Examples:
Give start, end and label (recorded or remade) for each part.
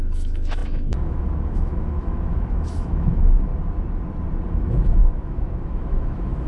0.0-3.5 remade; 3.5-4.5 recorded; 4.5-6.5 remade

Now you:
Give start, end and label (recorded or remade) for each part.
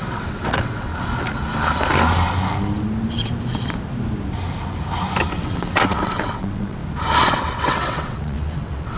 0.0-0.9 remade; 0.9-5.4 recorded; 5.4-6.8 remade; 6.8-7.3 recorded; 7.3-9.0 remade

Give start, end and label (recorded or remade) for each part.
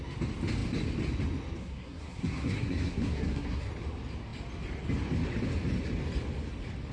0.0-1.6 recorded; 1.6-3.7 remade; 3.7-6.9 recorded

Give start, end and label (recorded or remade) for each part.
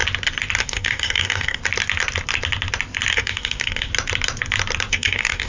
0.0-0.6 recorded; 0.6-1.6 remade; 1.6-3.1 recorded; 3.1-3.9 remade; 3.9-4.9 recorded; 4.9-5.5 remade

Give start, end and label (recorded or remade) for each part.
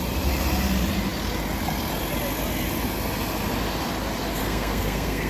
0.0-4.4 recorded; 4.4-5.3 remade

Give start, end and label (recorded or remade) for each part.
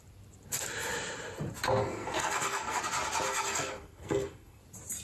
0.0-1.8 recorded; 1.8-2.8 remade; 2.8-3.3 recorded; 3.3-4.6 remade; 4.6-5.0 recorded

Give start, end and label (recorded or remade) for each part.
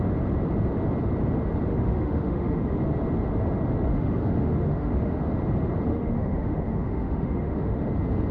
0.0-1.7 recorded; 1.7-2.8 remade; 2.8-3.9 recorded; 3.9-5.3 remade; 5.3-5.9 recorded; 5.9-7.9 remade; 7.9-8.3 recorded